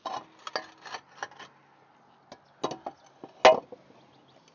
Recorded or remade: recorded